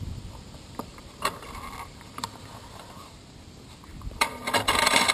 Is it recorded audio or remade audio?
remade